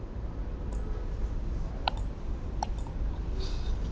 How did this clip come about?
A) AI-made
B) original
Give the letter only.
B